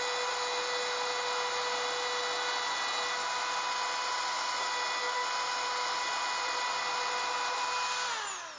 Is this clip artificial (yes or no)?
no